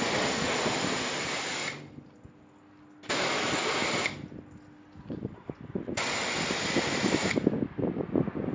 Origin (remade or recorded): recorded